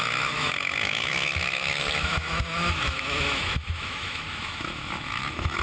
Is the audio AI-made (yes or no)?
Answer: yes